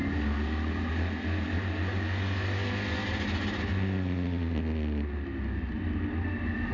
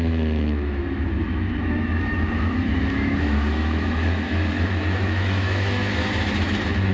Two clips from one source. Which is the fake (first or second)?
second